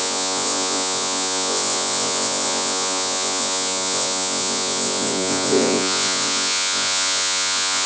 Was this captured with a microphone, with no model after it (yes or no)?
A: no